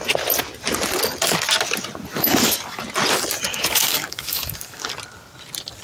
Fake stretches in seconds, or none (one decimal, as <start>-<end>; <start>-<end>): 2.1-2.8; 3.5-4.9